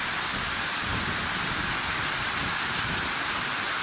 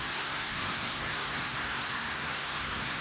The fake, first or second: second